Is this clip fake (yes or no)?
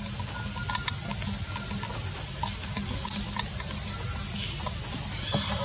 no